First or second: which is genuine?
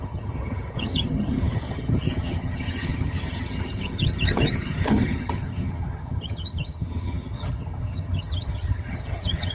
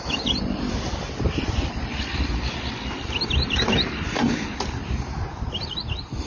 second